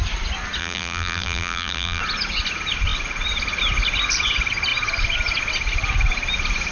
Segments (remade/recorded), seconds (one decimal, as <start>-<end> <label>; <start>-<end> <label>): 0.0-0.6 recorded; 0.6-2.0 remade; 2.0-6.7 recorded